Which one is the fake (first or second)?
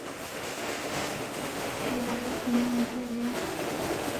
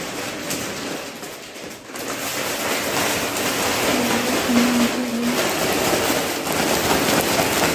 first